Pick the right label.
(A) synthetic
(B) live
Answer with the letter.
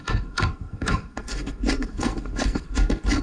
A